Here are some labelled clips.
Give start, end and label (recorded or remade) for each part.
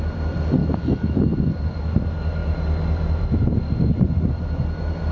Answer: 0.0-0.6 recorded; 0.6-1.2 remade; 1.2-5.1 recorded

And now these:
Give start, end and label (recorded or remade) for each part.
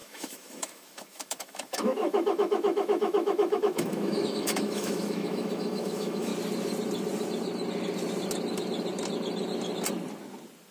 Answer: 0.0-6.3 remade; 6.3-10.7 recorded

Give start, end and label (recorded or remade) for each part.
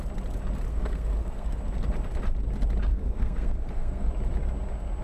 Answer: 0.0-0.7 recorded; 0.7-1.6 remade; 1.6-2.9 recorded; 2.9-4.1 remade; 4.1-5.0 recorded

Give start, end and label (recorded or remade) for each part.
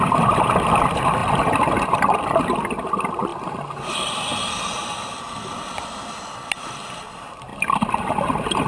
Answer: 0.0-1.2 remade; 1.2-2.4 recorded; 2.4-3.3 remade; 3.3-3.9 recorded; 3.9-4.3 remade; 4.3-4.8 recorded; 4.8-7.5 remade; 7.5-8.0 recorded; 8.0-8.7 remade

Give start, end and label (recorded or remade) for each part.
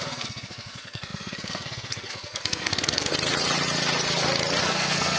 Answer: 0.0-3.1 remade; 3.1-4.6 recorded; 4.6-5.2 remade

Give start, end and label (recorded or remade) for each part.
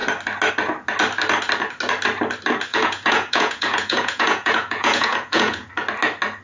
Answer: 0.0-2.7 recorded; 2.7-5.7 remade; 5.7-6.4 recorded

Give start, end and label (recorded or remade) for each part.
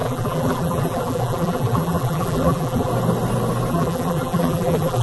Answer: 0.0-2.9 remade; 2.9-3.7 recorded; 3.7-5.0 remade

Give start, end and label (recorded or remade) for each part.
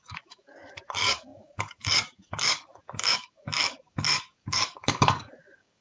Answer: 0.0-5.8 remade